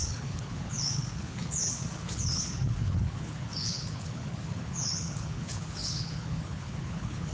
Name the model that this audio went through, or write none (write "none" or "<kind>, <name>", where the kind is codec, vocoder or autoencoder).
codec, HILCodec